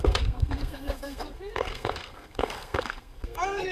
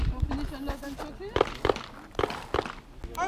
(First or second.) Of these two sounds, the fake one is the first